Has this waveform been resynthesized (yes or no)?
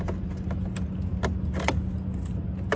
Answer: no